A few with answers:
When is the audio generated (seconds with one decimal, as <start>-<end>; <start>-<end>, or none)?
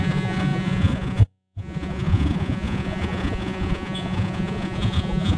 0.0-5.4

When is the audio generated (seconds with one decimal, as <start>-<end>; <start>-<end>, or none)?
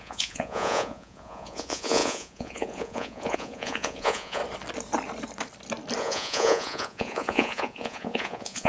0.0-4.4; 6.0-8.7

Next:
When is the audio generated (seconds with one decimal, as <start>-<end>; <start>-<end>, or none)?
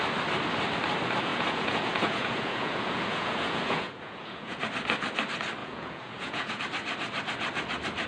1.3-4.6; 5.6-6.6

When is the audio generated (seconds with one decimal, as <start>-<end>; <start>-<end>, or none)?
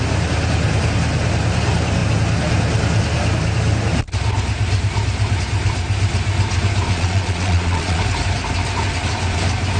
6.9-8.0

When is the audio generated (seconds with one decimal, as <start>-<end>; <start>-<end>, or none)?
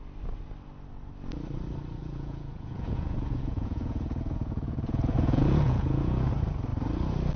2.0-6.3